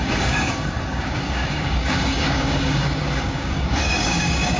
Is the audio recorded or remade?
remade